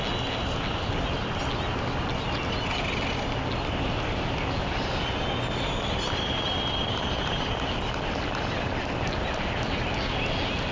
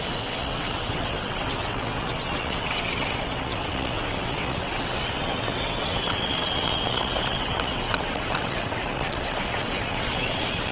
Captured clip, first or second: first